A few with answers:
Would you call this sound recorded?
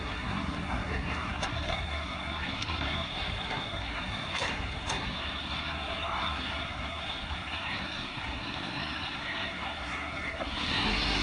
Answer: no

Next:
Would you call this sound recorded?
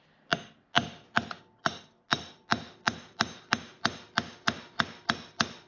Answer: yes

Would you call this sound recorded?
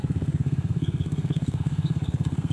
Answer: no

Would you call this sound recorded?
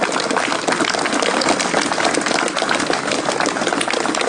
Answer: yes